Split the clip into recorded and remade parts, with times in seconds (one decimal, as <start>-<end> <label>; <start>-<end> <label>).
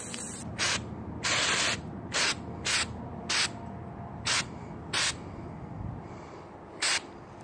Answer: 0.0-7.4 recorded